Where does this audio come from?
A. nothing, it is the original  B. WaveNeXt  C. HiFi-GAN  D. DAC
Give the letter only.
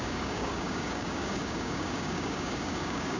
D